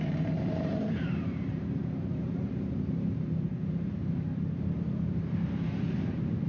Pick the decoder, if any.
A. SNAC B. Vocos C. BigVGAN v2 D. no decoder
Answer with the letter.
C